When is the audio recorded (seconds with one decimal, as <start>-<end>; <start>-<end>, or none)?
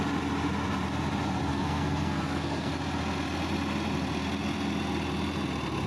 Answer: 0.0-1.5; 2.7-5.9